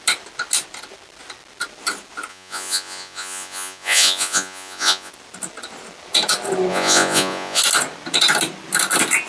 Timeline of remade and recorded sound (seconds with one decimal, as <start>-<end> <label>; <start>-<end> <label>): 0.0-2.3 recorded; 2.3-5.1 remade; 5.1-6.7 recorded; 6.7-7.6 remade; 7.6-9.3 recorded